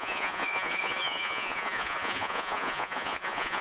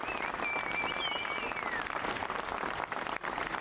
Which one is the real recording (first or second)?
second